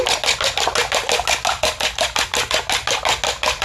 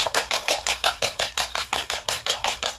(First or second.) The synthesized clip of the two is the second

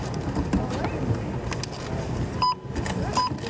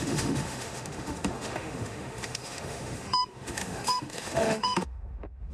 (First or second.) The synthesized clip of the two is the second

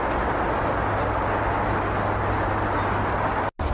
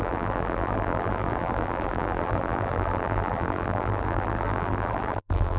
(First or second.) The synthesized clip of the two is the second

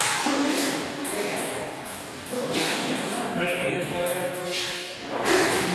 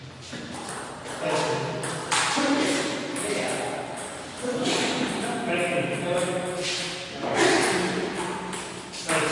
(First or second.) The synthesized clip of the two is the first